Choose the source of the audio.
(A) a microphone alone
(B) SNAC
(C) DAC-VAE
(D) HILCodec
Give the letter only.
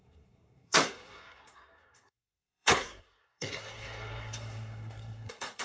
B